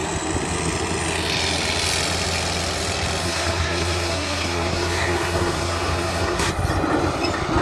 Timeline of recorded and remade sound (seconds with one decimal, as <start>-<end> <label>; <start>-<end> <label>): 0.0-3.2 recorded; 3.2-6.5 remade; 6.5-7.6 recorded

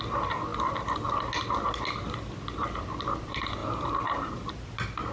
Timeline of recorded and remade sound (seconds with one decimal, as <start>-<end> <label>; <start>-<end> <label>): 0.0-3.6 recorded; 3.6-4.4 remade; 4.4-5.1 recorded

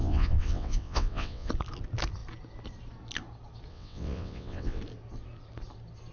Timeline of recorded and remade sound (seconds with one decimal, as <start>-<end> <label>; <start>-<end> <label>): 0.0-1.5 remade; 1.5-3.7 recorded; 3.7-4.8 remade; 4.8-6.1 recorded

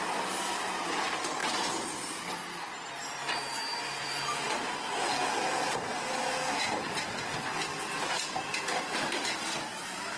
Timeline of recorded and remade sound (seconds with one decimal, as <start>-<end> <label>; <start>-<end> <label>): 0.0-3.7 recorded; 3.7-4.9 remade; 4.9-10.2 recorded

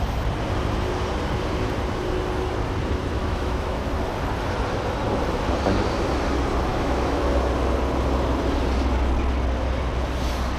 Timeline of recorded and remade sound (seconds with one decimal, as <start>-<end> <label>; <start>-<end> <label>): 0.0-3.2 recorded; 3.2-3.8 remade; 3.8-6.7 recorded; 6.7-7.2 remade; 7.2-10.6 recorded

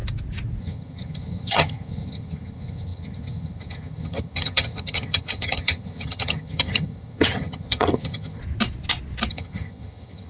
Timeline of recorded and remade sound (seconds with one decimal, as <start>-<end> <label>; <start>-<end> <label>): 0.0-0.6 recorded; 0.6-8.4 remade; 8.4-9.3 recorded; 9.3-10.3 remade

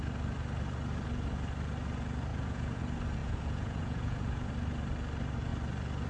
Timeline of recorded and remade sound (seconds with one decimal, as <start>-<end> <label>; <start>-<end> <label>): 0.0-2.3 recorded; 2.3-2.8 remade; 2.8-3.2 recorded; 3.2-4.5 remade; 4.5-6.1 recorded